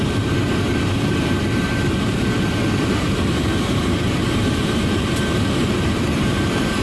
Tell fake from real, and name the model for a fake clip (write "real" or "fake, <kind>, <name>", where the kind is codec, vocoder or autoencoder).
fake, vocoder, BigVGAN v2